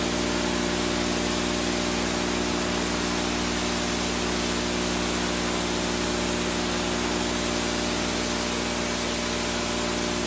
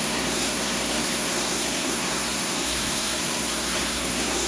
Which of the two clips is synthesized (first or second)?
second